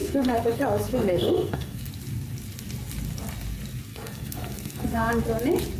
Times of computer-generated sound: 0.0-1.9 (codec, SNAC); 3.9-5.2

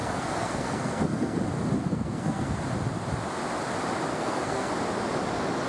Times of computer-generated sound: 0.0-1.4 (codec, SNAC); 1.8-2.6; 4.1-4.7

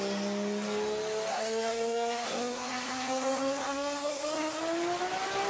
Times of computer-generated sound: 1.3-4.6 (codec, SNAC)